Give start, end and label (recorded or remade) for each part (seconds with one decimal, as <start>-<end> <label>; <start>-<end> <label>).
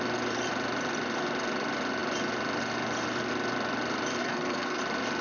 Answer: 0.0-4.2 recorded; 4.2-4.8 remade; 4.8-5.2 recorded